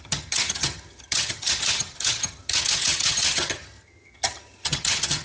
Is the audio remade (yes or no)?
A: yes